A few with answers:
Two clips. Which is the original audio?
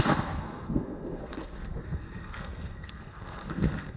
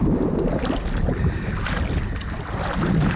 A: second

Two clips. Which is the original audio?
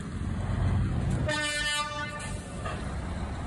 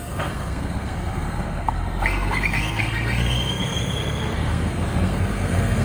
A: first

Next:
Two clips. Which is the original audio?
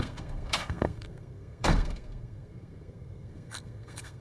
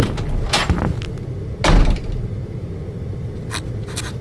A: second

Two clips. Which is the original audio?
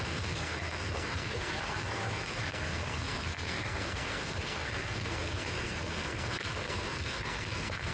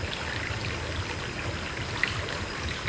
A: second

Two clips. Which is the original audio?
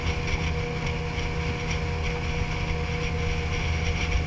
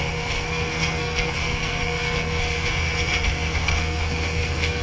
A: first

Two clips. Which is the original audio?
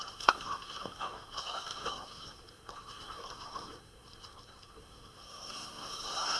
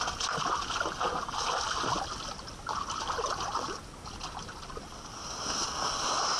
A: second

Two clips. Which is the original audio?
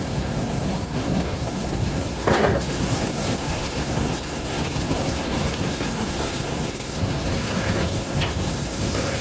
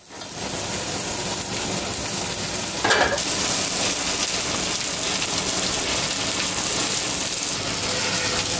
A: second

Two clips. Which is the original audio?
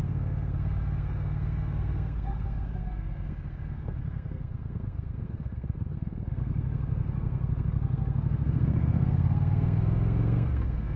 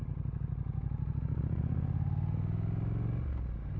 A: second